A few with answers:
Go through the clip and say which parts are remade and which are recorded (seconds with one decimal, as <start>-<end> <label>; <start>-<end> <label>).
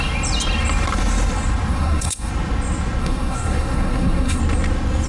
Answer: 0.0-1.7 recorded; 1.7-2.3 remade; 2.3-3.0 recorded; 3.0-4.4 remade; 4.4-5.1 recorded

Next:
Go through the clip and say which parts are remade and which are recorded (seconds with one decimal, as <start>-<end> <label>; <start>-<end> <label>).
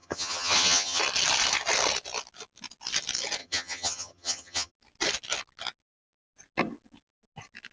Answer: 0.0-1.0 remade; 1.0-3.4 recorded; 3.4-4.7 remade; 4.7-7.7 recorded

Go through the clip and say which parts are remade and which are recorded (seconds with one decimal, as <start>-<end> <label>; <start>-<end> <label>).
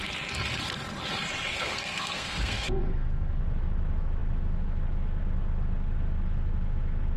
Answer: 0.0-1.5 recorded; 1.5-3.4 remade; 3.4-7.2 recorded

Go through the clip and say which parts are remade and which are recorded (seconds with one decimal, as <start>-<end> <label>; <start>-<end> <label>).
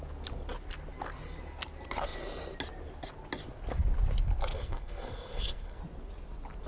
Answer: 0.0-4.5 recorded; 4.5-5.8 remade; 5.8-6.7 recorded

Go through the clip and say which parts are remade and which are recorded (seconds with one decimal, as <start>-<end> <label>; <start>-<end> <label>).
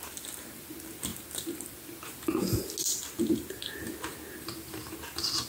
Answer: 0.0-5.5 recorded